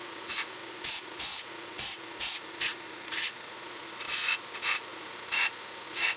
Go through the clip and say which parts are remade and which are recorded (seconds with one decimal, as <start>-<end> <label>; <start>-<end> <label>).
0.0-6.2 remade